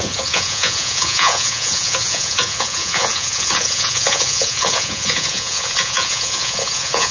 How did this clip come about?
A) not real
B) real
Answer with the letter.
A